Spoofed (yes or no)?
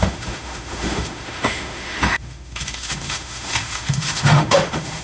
yes